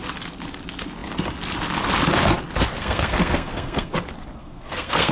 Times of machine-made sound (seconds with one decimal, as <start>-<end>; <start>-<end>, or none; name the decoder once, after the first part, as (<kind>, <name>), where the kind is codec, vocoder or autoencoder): 2.8-3.9 (codec, SNAC); 4.4-5.1